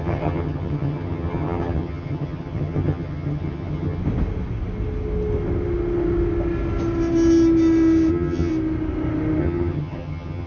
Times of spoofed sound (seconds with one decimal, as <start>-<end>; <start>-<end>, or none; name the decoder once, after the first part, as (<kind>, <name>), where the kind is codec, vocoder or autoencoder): 0.0-4.0 (vocoder, HiFi-GAN); 8.1-8.5; 9.4-10.5